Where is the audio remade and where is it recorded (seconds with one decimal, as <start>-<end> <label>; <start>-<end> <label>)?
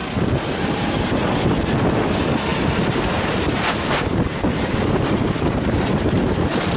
0.0-1.6 remade; 1.6-2.5 recorded; 2.5-6.8 remade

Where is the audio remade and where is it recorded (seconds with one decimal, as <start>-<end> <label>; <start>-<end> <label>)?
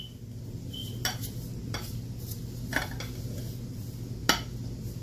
0.0-5.0 recorded